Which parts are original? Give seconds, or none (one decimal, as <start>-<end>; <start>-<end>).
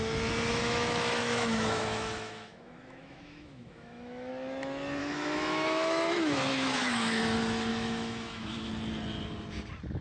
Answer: 0.0-0.5; 4.3-5.0; 7.2-7.7; 8.7-10.0